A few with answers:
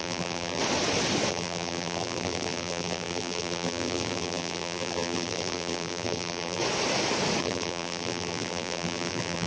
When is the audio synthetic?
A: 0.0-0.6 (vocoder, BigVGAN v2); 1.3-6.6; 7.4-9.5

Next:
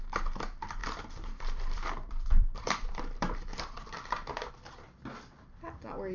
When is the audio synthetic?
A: 0.8-4.5 (vocoder, BigVGAN v2)

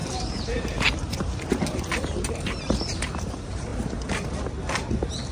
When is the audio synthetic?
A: 0.0-3.7 (vocoder, BigVGAN v2)

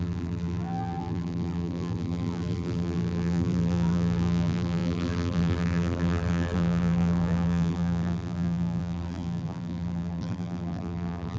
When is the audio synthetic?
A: 0.0-11.4 (vocoder, BigVGAN v2)

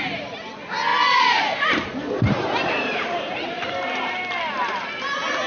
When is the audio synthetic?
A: 0.9-4.2 (vocoder, BigVGAN v2)

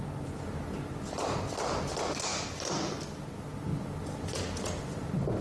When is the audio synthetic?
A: none

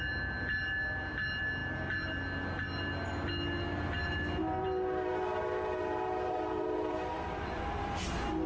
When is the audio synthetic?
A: 4.6-8.1 (vocoder, BigVGAN v2)

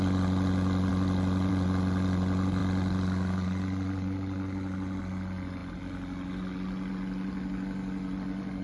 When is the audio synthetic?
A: none